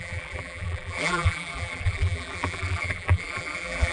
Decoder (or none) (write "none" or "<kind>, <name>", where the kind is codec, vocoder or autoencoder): vocoder, BigVGAN v2